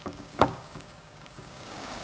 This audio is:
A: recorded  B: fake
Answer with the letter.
B